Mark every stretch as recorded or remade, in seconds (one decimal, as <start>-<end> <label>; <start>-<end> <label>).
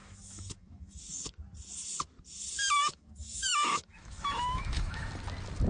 0.0-1.0 remade; 1.0-2.8 recorded; 2.8-5.1 remade; 5.1-5.7 recorded